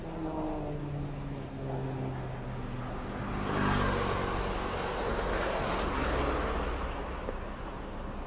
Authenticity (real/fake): real